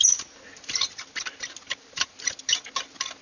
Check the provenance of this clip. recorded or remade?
recorded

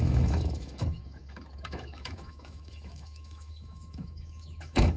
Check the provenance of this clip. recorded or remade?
remade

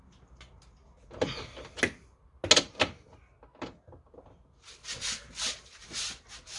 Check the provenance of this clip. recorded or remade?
recorded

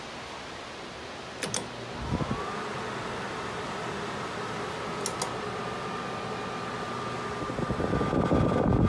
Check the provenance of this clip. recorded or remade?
recorded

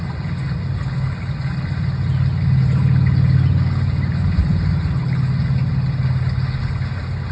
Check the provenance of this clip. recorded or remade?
recorded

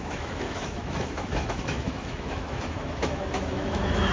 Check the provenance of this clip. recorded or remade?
remade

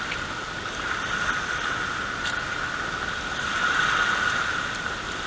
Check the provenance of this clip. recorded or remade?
recorded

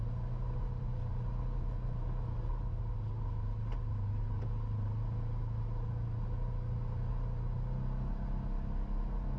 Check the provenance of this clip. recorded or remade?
recorded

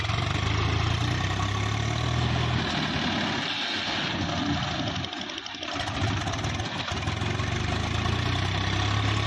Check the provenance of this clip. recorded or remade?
recorded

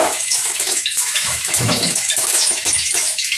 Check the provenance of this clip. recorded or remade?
remade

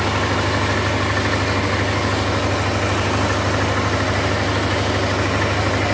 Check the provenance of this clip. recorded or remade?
recorded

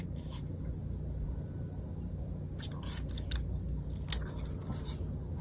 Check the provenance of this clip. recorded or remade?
recorded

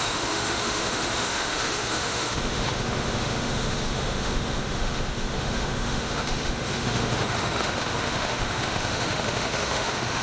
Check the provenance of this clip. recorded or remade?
remade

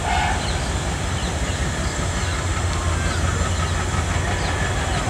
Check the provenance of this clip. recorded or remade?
recorded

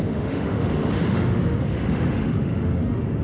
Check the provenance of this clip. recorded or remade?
remade